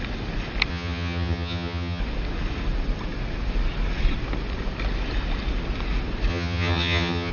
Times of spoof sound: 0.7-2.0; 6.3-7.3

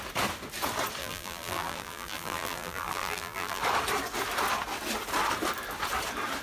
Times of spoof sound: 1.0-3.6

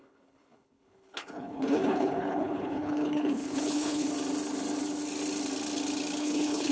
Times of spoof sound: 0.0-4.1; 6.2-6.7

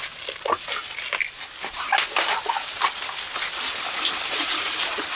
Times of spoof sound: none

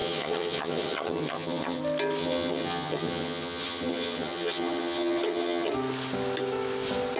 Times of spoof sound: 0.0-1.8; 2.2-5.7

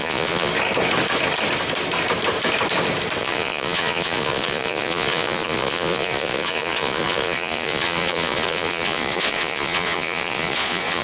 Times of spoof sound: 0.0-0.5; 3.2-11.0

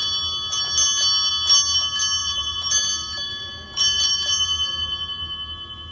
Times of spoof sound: 2.2-5.9

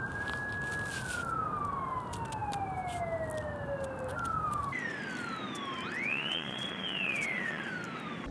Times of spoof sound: 6.1-7.7